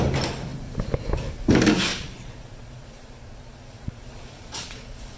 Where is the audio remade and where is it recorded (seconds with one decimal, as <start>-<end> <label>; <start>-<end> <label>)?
0.0-1.9 recorded; 1.9-5.2 remade